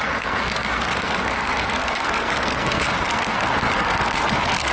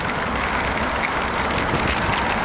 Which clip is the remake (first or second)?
first